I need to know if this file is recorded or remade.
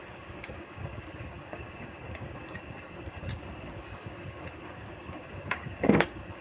remade